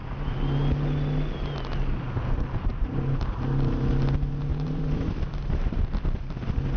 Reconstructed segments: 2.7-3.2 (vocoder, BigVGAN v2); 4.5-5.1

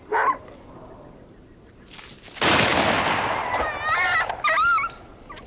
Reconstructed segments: none

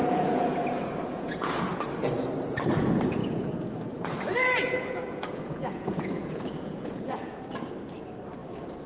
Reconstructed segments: 0.0-1.6 (vocoder, Vocos); 3.2-7.6

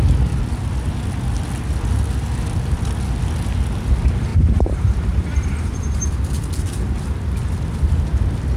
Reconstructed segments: 4.3-6.1 (vocoder, BigVGAN v2)

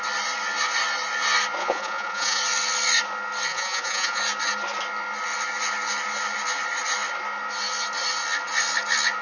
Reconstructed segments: 1.6-2.4 (vocoder, Vocos); 3.5-4.2

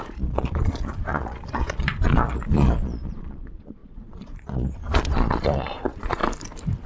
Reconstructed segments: 0.0-6.2 (vocoder, Vocos)

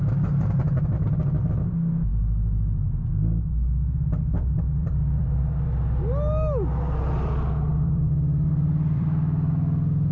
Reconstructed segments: 4.8-5.4 (vocoder, BigVGAN v2); 7.7-9.5